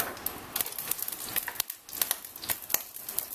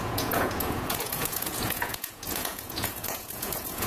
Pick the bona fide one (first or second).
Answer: first